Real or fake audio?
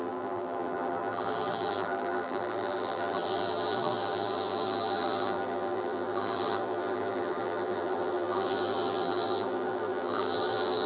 fake